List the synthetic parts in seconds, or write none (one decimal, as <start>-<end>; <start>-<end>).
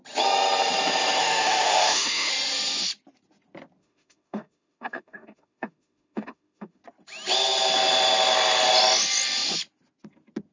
1.2-2.3; 3.8-6.8